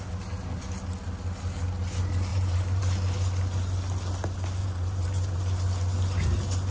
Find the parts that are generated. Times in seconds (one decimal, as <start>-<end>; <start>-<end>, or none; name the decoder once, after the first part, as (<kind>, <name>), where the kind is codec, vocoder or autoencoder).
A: 2.3-2.8 (vocoder, BigVGAN v2); 4.6-5.4

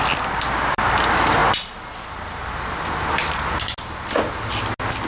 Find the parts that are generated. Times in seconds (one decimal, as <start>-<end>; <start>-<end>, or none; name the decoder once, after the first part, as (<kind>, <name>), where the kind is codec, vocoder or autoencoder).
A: none